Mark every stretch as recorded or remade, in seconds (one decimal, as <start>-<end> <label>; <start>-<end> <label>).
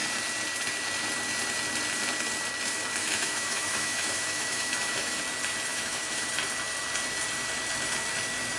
0.0-3.0 recorded; 3.0-5.2 remade; 5.2-5.7 recorded; 5.7-6.3 remade; 6.3-8.6 recorded